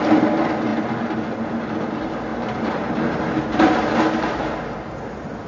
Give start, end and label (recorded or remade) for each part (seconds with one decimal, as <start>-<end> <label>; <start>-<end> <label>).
0.0-2.3 recorded; 2.3-3.7 remade; 3.7-5.5 recorded